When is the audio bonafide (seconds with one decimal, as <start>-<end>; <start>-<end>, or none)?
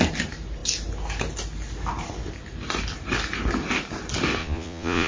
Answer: 0.0-4.4